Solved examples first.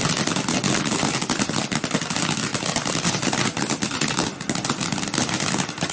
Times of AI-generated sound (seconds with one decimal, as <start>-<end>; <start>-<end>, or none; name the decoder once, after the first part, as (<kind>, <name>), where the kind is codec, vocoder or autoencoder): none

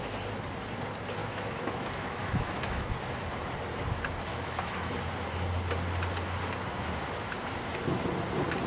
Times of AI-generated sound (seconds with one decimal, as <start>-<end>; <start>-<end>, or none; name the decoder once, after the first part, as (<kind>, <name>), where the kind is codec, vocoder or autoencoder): 1.2-2.9 (autoencoder, DAC-VAE); 4.3-4.9

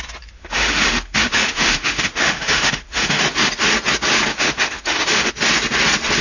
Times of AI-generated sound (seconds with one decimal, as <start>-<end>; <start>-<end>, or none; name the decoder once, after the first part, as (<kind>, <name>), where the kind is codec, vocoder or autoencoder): 0.4-3.2 (autoencoder, DAC-VAE); 4.3-5.3

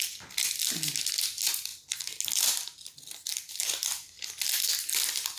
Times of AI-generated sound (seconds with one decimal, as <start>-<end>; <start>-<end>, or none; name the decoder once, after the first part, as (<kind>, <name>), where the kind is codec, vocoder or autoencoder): none